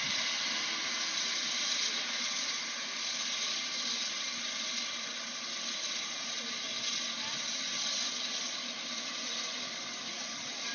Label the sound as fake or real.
real